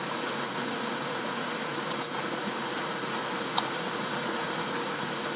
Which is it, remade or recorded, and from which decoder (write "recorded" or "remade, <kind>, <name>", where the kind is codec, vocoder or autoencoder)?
remade, vocoder, Vocos